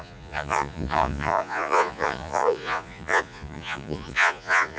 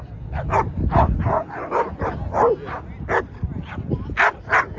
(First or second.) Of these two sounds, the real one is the second